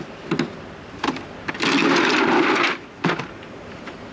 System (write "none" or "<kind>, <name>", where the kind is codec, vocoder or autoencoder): none